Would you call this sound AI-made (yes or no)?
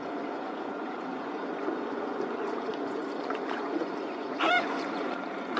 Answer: yes